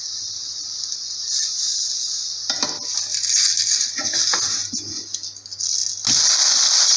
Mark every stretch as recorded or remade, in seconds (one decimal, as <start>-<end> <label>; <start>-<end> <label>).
0.0-7.0 recorded